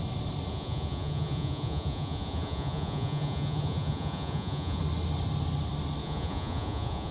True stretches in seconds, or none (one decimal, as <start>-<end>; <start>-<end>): 0.0-0.5; 4.8-6.0